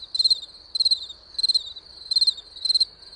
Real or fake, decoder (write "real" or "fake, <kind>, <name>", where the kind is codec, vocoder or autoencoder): real